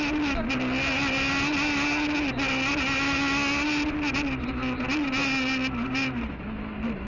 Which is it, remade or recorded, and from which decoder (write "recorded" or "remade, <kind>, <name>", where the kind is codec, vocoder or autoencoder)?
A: recorded